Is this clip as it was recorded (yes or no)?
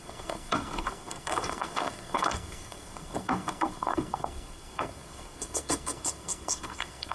no